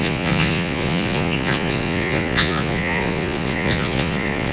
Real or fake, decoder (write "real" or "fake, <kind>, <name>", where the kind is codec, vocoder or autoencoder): fake, vocoder, Vocos